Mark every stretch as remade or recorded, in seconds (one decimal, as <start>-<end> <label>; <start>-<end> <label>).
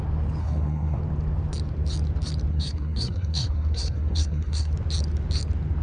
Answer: 0.0-0.4 recorded; 0.4-1.0 remade; 1.0-2.5 recorded; 2.5-4.7 remade; 4.7-5.8 recorded